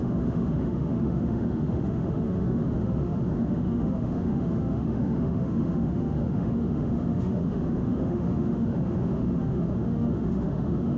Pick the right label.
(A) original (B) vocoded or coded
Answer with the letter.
B